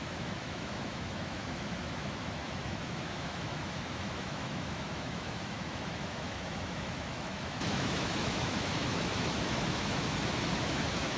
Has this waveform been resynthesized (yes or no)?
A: yes